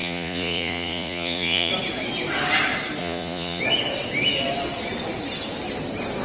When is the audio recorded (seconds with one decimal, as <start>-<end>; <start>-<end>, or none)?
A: 1.7-3.0; 3.6-6.2